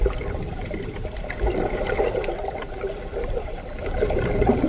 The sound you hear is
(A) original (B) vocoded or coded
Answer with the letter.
B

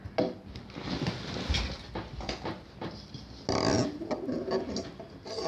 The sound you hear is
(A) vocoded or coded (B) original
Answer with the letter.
B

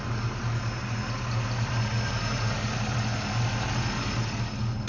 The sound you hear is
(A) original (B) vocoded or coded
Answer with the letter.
A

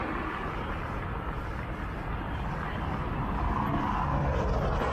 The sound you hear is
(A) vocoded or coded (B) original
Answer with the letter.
B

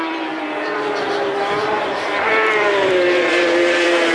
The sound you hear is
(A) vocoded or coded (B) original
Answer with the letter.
A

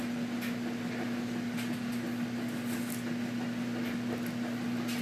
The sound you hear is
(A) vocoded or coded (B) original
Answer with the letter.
B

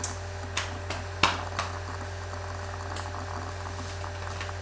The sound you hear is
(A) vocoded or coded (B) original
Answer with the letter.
B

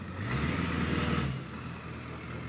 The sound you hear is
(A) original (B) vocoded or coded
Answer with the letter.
A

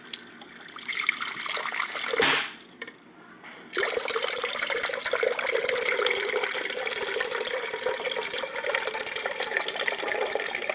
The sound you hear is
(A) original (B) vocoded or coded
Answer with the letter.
A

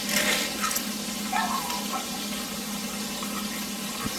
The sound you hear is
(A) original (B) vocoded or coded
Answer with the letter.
A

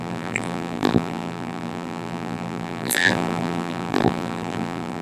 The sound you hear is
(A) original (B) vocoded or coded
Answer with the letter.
B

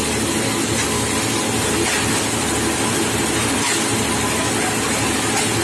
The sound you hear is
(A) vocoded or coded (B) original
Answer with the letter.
B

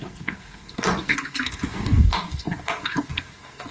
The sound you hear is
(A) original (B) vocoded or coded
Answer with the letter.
B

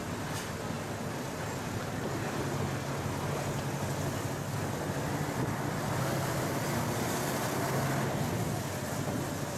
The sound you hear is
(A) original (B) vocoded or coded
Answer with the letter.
A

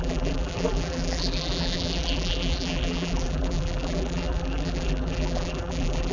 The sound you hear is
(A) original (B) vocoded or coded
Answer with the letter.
B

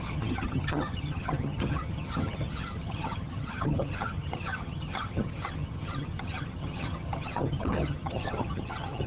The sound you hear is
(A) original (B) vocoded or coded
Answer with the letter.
B